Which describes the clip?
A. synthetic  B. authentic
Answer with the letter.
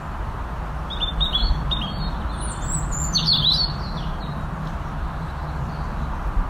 B